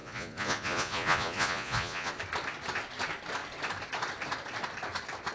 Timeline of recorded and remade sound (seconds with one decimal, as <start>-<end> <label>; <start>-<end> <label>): 0.0-2.1 remade; 2.1-5.3 recorded